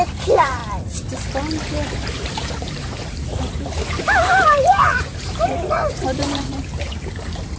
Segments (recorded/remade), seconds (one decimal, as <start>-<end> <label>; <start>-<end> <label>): 0.0-0.6 remade; 0.6-1.9 recorded; 1.9-7.6 remade